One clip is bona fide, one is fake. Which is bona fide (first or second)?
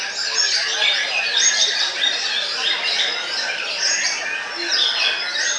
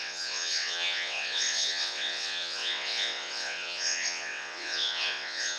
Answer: first